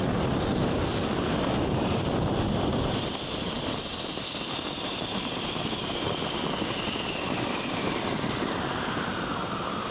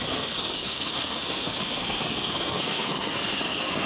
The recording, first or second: first